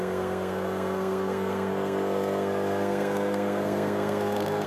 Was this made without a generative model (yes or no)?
no